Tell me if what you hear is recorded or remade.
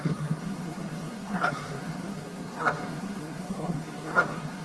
remade